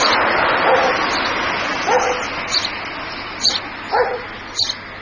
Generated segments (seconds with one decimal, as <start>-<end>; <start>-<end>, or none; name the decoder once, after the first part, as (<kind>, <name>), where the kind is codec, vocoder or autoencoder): none